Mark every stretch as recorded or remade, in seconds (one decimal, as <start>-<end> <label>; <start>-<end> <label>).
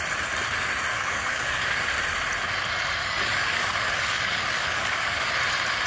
0.0-0.9 recorded; 0.9-1.7 remade; 1.7-3.0 recorded; 3.0-5.3 remade; 5.3-5.9 recorded